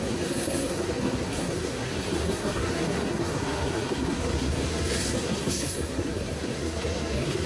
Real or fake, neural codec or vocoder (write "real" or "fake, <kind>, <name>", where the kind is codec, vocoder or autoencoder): fake, codec, SNAC